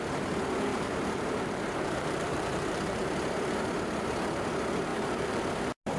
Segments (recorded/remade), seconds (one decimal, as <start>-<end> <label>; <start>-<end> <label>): 0.0-0.7 recorded; 0.7-3.2 remade; 3.2-4.9 recorded; 4.9-5.4 remade; 5.4-6.0 recorded